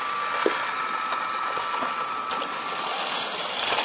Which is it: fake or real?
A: real